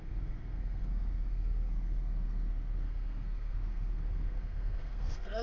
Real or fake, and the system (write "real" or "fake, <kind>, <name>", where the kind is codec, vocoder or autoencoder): fake, codec, SNAC